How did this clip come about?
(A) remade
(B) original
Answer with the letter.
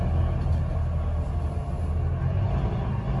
B